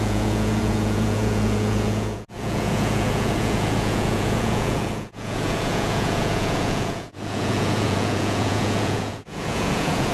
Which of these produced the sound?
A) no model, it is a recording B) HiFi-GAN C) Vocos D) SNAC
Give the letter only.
C